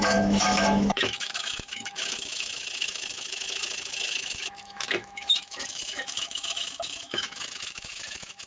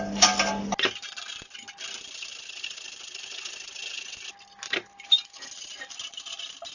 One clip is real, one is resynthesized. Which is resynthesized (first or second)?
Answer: first